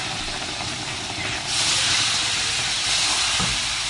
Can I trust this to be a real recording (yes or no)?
yes